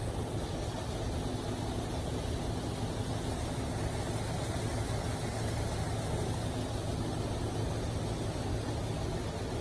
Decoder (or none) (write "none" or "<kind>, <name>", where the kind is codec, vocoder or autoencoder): none